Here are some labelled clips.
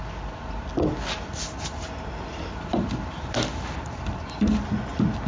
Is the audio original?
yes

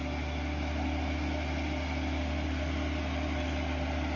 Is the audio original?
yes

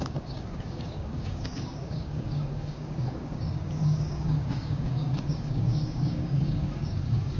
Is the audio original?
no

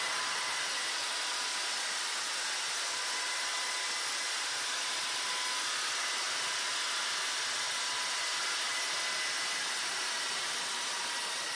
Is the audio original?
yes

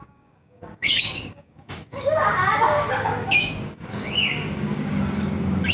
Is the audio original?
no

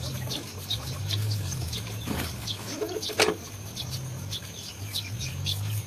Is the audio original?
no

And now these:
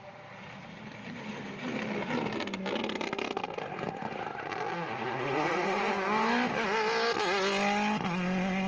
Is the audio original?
yes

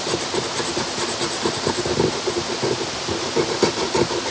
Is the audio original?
yes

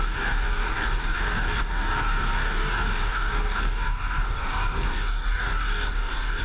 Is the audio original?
no